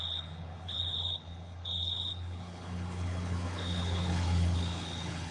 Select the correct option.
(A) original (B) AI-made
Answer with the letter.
B